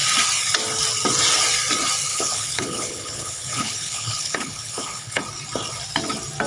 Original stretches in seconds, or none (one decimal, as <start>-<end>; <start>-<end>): 0.0-2.1; 5.2-6.5